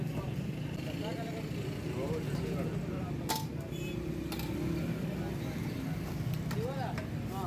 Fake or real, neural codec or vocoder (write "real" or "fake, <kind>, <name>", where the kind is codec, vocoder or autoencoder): real